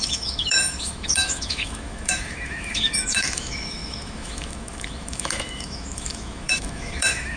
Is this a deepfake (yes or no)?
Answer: yes